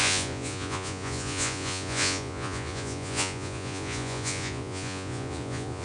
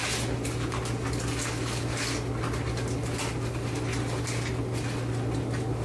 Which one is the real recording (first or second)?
second